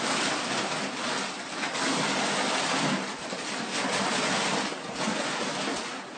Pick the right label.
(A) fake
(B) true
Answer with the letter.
B